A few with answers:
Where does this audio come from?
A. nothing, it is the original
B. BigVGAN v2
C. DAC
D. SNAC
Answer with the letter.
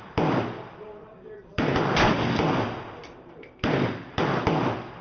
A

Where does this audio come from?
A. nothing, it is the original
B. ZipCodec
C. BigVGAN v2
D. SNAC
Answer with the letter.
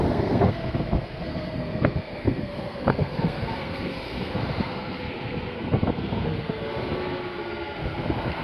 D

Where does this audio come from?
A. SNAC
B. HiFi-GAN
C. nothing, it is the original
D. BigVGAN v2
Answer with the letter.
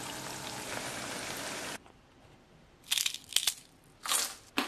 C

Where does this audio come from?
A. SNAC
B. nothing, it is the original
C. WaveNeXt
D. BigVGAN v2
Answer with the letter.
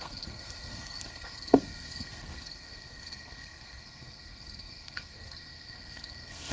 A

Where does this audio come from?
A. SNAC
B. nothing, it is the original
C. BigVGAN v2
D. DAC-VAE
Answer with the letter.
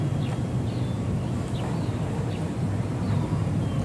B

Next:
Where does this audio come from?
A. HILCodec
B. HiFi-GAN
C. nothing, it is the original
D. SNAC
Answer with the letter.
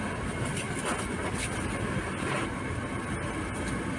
C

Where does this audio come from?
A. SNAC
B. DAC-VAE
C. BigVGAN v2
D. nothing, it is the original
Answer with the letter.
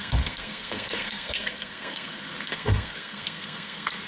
A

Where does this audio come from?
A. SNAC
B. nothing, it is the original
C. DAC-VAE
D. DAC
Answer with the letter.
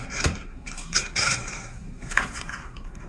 A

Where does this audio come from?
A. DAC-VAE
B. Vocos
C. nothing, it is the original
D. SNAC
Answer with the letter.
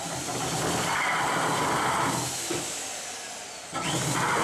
C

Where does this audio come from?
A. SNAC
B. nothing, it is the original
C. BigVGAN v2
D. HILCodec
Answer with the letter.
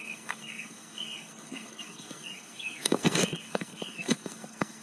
A